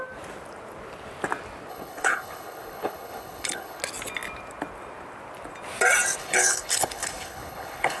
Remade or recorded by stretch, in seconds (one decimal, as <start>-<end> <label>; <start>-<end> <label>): 0.0-1.7 recorded; 1.7-3.8 remade; 3.8-6.2 recorded; 6.2-8.0 remade